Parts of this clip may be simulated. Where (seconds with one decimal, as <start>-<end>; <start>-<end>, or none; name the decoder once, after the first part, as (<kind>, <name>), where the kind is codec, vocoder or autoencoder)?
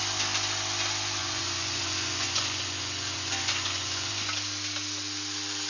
1.2-4.1 (vocoder, Vocos)